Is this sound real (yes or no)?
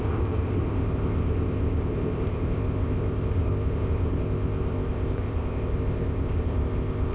no